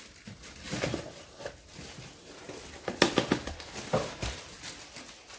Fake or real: real